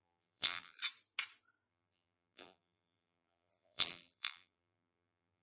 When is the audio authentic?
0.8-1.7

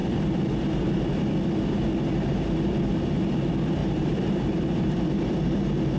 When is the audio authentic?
0.0-3.8; 5.1-6.0